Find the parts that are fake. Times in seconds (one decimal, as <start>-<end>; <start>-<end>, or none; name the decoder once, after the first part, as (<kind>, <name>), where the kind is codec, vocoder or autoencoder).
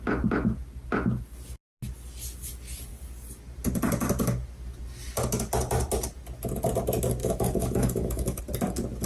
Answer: 7.2-8.4 (autoencoder, DAC-VAE)